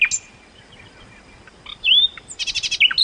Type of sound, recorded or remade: recorded